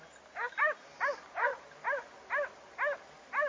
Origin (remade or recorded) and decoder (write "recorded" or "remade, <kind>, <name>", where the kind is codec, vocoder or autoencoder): recorded